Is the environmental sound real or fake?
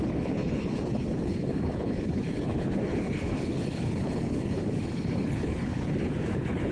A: fake